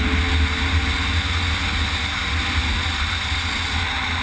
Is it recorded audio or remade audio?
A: recorded